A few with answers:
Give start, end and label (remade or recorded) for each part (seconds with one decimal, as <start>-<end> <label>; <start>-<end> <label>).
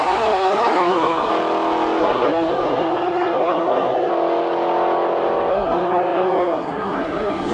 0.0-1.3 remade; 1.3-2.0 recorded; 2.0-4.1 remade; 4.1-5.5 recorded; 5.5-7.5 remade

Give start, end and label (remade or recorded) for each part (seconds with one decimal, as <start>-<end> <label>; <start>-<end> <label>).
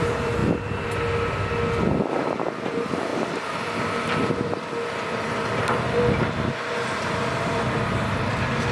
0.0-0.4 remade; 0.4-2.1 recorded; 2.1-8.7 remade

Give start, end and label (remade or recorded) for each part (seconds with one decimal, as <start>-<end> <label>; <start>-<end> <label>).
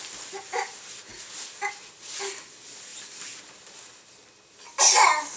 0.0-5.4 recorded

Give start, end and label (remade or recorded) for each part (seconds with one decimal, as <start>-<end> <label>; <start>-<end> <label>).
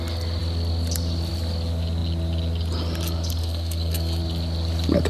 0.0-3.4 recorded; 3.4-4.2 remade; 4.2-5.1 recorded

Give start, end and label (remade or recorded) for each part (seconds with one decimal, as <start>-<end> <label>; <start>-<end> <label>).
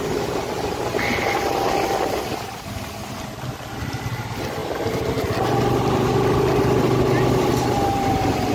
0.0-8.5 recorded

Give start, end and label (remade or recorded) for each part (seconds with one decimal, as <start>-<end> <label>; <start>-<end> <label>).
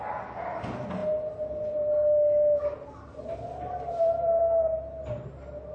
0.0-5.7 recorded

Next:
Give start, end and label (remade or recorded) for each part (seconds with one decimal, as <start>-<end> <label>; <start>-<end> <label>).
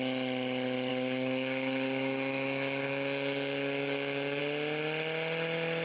0.0-0.9 recorded; 0.9-4.4 remade; 4.4-5.8 recorded